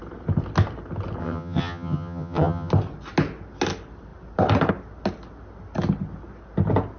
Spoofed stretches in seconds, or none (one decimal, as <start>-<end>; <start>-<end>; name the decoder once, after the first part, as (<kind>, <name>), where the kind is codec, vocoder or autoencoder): 1.2-2.7 (vocoder, HiFi-GAN)